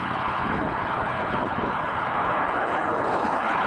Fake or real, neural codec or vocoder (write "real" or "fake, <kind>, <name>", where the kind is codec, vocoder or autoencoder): fake, codec, HILCodec